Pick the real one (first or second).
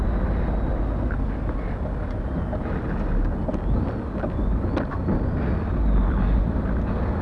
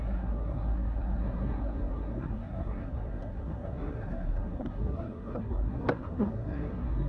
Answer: first